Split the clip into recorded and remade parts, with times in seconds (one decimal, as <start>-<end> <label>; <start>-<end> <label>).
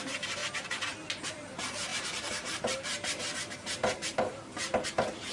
0.0-0.4 remade; 0.4-1.5 recorded; 1.5-5.3 remade